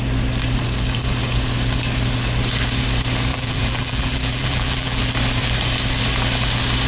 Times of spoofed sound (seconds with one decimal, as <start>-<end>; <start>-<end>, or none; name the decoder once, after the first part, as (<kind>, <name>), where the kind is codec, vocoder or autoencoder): 3.3-5.0 (vocoder, BigVGAN v2)